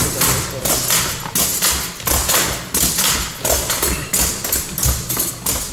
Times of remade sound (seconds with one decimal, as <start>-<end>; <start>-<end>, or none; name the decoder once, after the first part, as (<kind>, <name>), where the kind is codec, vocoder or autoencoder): none